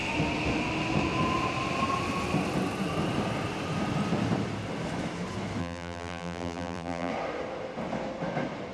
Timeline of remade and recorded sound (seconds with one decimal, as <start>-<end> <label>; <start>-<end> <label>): 0.0-5.6 recorded; 5.6-7.1 remade; 7.1-8.7 recorded